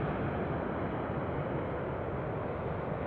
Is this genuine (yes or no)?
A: yes